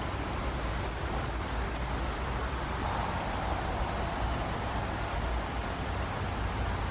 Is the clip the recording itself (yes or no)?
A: yes